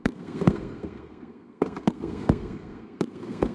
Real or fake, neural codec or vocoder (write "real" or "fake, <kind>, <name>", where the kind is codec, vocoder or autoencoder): fake, codec, SNAC